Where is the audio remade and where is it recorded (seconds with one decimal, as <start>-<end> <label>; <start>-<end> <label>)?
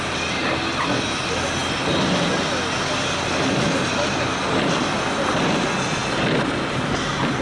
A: 0.0-7.4 recorded